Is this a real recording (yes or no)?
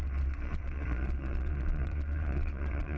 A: no